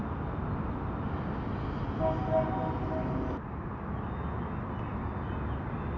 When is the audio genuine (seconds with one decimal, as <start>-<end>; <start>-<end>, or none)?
0.0-6.0